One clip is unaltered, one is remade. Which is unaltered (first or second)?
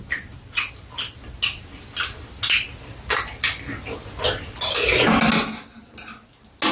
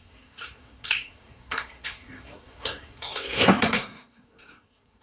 first